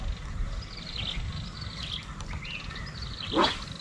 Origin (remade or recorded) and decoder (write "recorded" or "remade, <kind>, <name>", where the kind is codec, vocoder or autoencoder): recorded